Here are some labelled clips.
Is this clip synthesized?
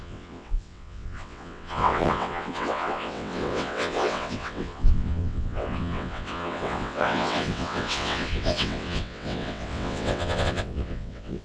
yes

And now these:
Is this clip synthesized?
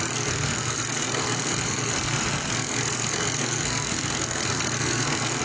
yes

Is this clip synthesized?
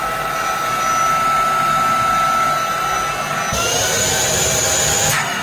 no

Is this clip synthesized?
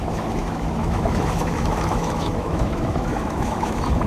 yes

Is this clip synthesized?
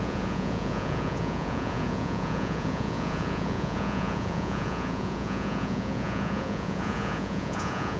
yes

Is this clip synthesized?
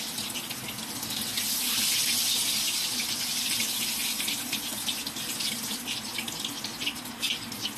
no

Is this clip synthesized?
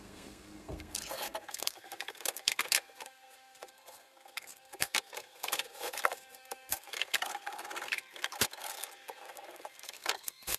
yes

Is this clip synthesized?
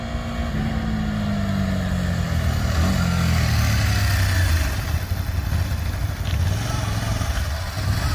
no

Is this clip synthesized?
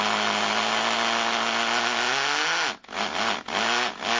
no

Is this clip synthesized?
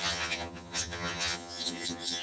yes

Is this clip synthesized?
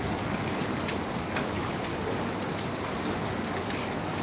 yes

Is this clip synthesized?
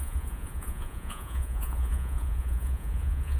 yes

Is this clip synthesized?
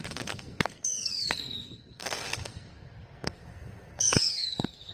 yes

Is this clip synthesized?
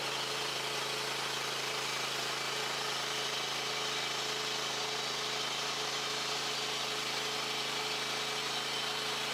no